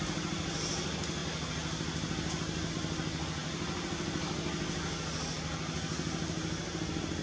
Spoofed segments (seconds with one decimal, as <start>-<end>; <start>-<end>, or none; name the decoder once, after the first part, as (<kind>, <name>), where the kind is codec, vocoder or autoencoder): none